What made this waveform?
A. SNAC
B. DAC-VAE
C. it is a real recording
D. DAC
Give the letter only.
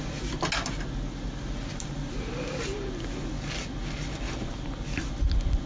C